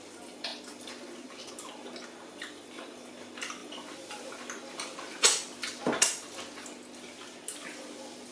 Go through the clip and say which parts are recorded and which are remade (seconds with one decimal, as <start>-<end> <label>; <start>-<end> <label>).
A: 0.0-8.3 recorded